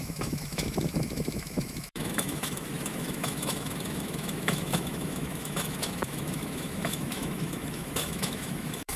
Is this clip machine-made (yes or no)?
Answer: yes